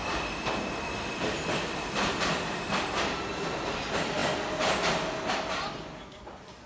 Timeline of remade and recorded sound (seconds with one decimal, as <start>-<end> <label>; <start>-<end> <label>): 0.0-2.6 remade; 2.6-6.7 recorded